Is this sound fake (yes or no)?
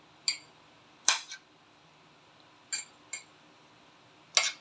no